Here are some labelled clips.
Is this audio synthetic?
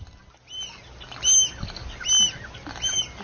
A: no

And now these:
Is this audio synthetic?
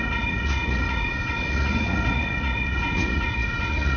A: yes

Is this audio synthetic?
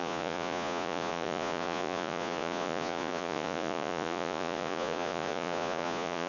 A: yes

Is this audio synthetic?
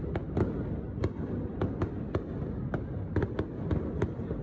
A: no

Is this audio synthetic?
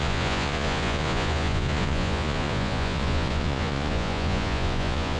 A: yes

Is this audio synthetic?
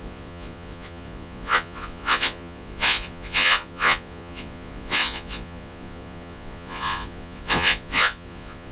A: yes